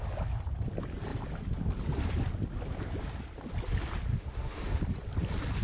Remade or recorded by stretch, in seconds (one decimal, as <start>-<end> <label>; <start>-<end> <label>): 0.0-4.1 recorded; 4.1-4.8 remade; 4.8-5.6 recorded